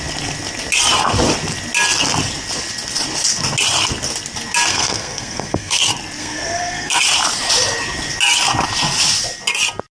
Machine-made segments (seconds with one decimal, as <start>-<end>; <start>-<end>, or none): 4.7-5.8; 6.2-7.0